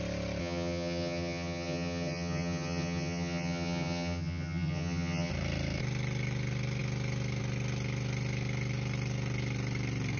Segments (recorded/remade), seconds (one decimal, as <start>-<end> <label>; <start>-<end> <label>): 0.0-0.4 recorded; 0.4-5.3 remade; 5.3-10.2 recorded